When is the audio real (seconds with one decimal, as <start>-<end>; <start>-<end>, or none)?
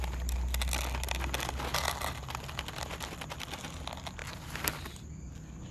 0.0-5.7